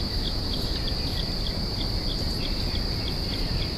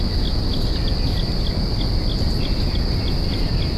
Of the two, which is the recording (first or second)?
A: second